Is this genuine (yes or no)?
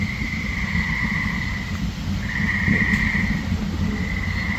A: yes